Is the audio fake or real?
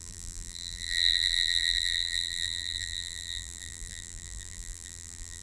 fake